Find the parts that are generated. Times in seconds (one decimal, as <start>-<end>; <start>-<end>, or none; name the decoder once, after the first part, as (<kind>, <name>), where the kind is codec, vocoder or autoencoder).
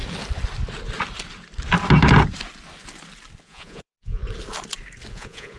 3.4-4.2 (vocoder, Vocos); 5.1-5.6